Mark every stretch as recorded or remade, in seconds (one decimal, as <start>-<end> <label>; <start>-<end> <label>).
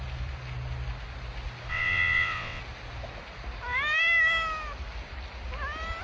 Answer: 0.0-1.7 recorded; 1.7-2.6 remade; 2.6-6.0 recorded